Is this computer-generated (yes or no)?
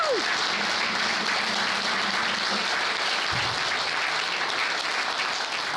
no